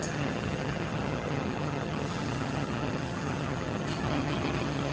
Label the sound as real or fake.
fake